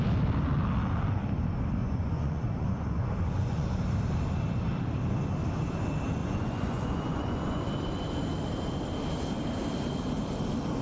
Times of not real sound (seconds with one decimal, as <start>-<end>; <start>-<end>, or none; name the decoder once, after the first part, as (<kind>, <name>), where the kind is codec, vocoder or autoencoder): 1.8-3.8 (vocoder, Vocos); 6.2-7.6